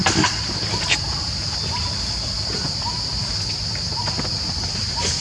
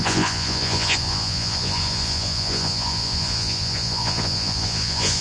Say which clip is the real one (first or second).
first